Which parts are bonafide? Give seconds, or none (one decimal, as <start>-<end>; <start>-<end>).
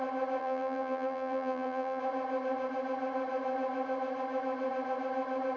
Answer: 0.0-0.4; 2.0-5.6